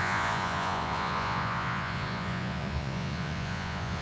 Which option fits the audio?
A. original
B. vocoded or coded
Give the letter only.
B